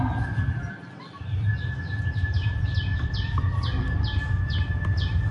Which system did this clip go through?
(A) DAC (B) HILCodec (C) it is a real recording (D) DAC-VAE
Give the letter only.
C